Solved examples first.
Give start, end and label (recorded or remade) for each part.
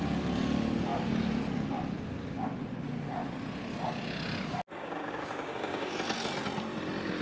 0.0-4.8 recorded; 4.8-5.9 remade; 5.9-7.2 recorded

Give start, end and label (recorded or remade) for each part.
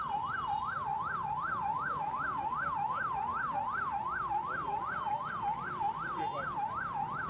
0.0-7.3 recorded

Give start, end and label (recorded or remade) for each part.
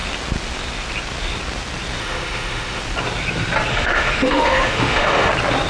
0.0-2.0 recorded; 2.0-2.8 remade; 2.8-3.7 recorded; 3.7-5.3 remade; 5.3-5.7 recorded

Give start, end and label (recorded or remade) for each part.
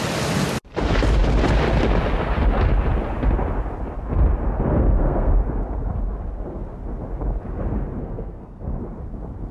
0.0-4.7 recorded; 4.7-5.3 remade; 5.3-8.0 recorded; 8.0-8.8 remade; 8.8-9.5 recorded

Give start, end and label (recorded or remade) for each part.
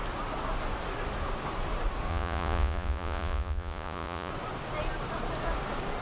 0.0-2.1 recorded; 2.1-4.3 remade; 4.3-6.0 recorded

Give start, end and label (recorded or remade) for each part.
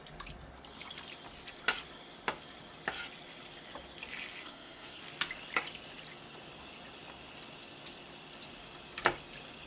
0.0-4.4 recorded; 4.4-5.0 remade; 5.0-9.7 recorded